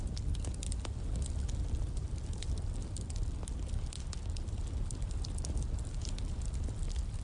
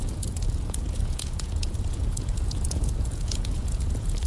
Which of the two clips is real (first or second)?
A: first